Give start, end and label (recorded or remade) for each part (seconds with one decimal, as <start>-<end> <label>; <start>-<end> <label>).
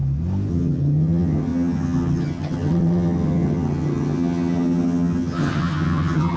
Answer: 0.0-0.5 recorded; 0.5-6.4 remade